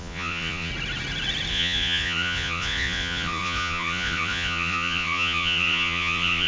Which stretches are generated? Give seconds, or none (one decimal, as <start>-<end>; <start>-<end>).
0.0-0.7; 1.5-6.5